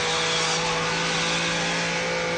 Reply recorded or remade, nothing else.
recorded